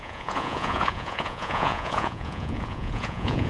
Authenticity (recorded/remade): remade